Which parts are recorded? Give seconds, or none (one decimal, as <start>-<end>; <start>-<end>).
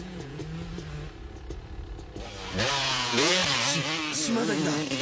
0.4-2.8; 3.4-5.0